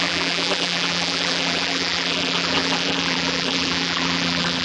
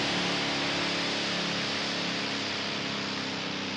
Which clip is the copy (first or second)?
first